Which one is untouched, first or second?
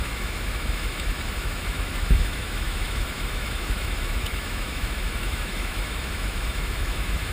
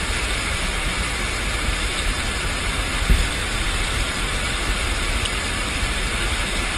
second